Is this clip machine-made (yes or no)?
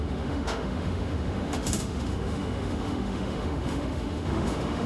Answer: yes